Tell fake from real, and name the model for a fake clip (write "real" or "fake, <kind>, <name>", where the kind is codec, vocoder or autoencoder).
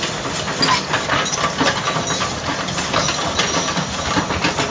real